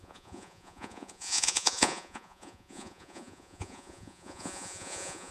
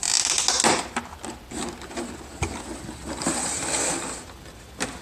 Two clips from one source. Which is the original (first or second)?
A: second